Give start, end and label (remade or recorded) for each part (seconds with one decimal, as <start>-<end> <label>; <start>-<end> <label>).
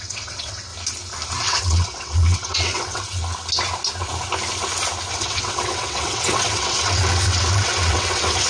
0.0-0.7 remade; 0.7-1.4 recorded; 1.4-3.2 remade; 3.2-5.1 recorded; 5.1-8.5 remade